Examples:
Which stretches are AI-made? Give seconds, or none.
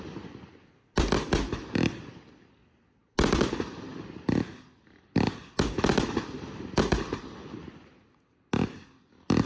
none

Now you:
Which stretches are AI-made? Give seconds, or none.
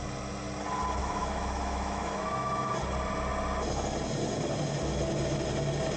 1.0-2.7 (autoencoder, DAC-VAE)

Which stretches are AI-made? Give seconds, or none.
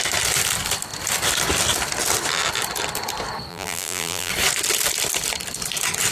3.5-4.3 (vocoder, BigVGAN v2)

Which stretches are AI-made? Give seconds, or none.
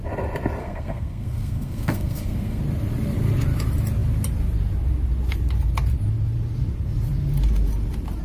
0.6-2.6 (codec, SNAC)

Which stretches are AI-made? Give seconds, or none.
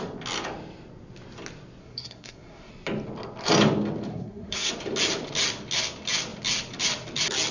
1.8-2.7 (codec, SNAC); 4.1-4.7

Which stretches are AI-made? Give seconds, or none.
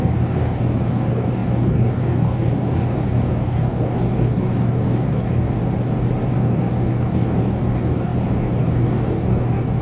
0.0-5.6 (codec, DAC); 6.3-9.8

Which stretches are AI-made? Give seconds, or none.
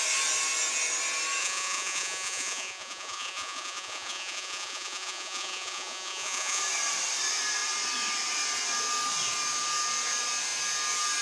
1.4-6.6 (vocoder, Vocos)